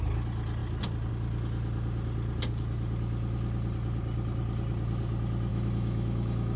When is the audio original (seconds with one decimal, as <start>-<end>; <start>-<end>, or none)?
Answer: 0.0-5.5